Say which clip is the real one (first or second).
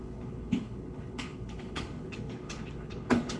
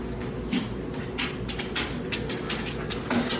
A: second